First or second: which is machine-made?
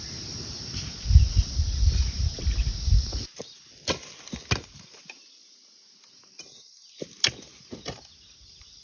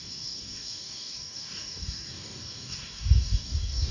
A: second